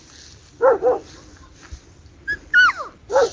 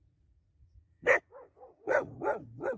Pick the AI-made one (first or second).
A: second